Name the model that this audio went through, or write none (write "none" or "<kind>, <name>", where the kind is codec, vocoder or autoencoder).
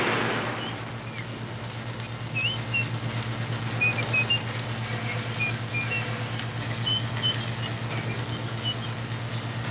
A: none